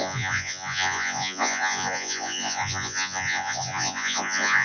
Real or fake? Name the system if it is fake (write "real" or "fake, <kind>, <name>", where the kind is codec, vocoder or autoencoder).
fake, vocoder, Vocos